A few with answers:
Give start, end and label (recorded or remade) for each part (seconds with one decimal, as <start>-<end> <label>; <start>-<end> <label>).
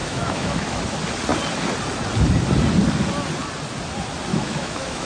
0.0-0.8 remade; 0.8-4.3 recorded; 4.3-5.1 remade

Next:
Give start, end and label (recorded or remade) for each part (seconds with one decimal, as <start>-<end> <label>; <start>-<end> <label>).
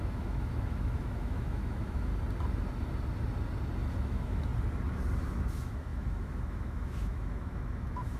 0.0-2.1 remade; 2.1-4.0 recorded; 4.0-4.5 remade; 4.5-5.2 recorded; 5.2-8.2 remade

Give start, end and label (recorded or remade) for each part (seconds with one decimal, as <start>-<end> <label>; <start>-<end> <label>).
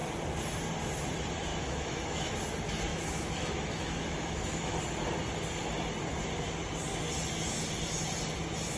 0.0-1.5 recorded; 1.5-2.3 remade; 2.3-2.9 recorded; 2.9-4.8 remade; 4.8-8.8 recorded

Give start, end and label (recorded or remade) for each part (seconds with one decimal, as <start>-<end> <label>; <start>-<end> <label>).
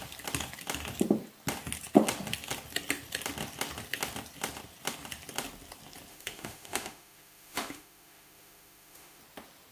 0.0-6.1 recorded; 6.1-9.2 remade; 9.2-9.7 recorded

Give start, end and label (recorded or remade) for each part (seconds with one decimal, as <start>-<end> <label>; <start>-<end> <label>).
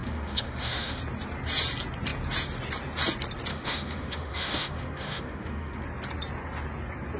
0.0-1.0 remade; 1.0-3.5 recorded; 3.5-5.8 remade; 5.8-7.2 recorded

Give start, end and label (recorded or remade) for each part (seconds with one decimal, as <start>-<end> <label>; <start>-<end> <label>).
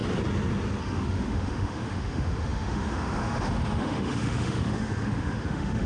0.0-0.8 recorded; 0.8-5.9 remade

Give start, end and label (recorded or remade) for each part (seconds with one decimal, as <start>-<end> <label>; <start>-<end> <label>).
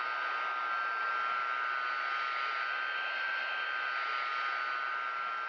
0.0-5.5 recorded